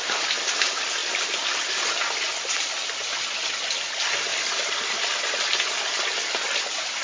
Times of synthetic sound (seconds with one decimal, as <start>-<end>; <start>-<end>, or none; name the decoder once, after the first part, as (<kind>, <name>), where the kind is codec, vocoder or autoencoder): 1.0-2.3 (vocoder, BigVGAN v2); 4.3-5.2